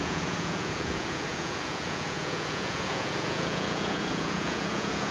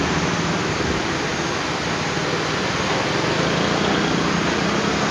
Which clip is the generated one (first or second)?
first